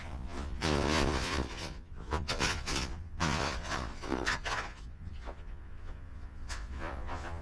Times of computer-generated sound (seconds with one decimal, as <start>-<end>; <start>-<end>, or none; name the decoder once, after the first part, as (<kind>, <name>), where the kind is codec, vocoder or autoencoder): 0.0-7.4 (vocoder, Vocos)